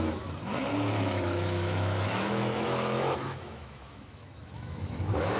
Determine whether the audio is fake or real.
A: fake